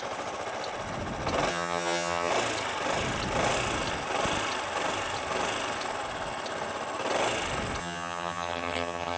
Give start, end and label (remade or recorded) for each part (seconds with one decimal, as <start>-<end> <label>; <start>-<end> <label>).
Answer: 0.0-1.5 recorded; 1.5-2.3 remade; 2.3-7.8 recorded; 7.8-9.2 remade